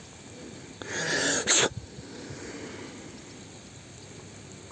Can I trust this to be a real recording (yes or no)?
yes